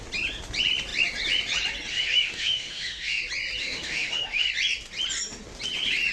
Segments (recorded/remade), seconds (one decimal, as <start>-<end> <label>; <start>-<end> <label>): 0.0-1.9 recorded; 1.9-3.2 remade; 3.2-3.6 recorded; 3.6-4.5 remade; 4.5-6.1 recorded